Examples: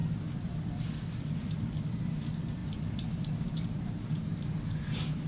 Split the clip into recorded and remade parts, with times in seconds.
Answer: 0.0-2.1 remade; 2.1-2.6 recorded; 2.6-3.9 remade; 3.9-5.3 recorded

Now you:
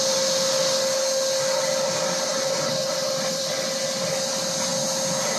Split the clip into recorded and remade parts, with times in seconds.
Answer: 0.0-2.3 recorded; 2.3-3.5 remade; 3.5-5.4 recorded

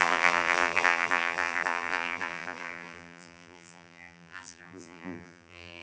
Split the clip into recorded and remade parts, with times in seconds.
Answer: 0.0-5.8 remade